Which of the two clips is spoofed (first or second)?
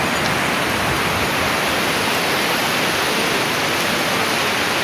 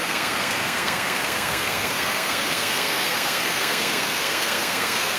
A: second